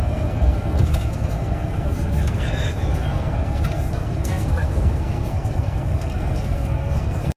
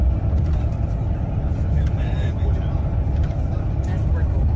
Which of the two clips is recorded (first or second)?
second